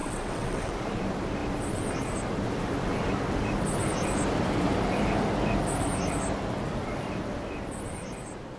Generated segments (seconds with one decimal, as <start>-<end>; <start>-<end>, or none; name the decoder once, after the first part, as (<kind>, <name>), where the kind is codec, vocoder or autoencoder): 0.0-0.7 (vocoder, WaveNeXt)